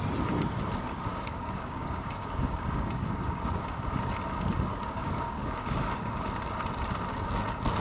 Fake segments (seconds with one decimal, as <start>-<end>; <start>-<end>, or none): 1.1-3.6; 4.7-6.3